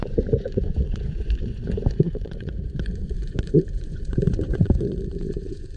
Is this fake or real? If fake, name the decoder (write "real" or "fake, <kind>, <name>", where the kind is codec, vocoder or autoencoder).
fake, vocoder, Vocos